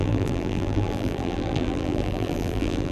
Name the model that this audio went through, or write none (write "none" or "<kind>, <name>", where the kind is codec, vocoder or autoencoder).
vocoder, BigVGAN v2